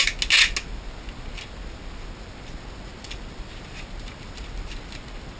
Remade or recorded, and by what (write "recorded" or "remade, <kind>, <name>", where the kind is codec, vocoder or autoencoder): recorded